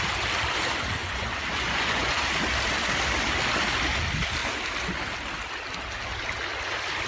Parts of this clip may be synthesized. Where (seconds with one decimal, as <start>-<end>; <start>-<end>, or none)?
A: 1.0-2.2